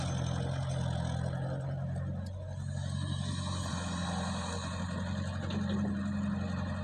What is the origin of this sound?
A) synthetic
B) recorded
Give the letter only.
B